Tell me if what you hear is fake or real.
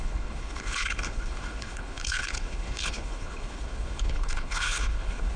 fake